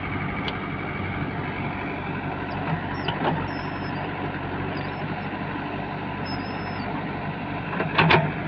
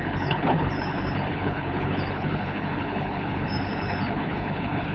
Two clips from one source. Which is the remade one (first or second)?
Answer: second